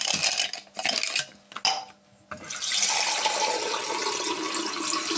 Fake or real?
real